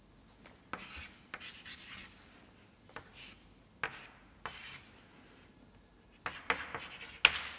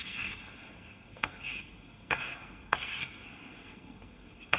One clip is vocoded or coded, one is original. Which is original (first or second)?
first